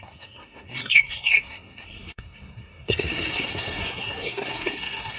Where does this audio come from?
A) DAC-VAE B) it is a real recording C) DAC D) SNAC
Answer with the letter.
D